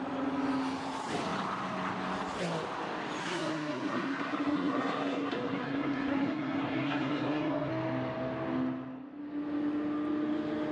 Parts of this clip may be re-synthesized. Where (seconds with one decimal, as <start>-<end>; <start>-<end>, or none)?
3.2-7.7